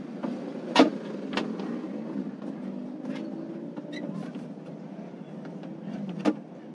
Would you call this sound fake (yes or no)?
no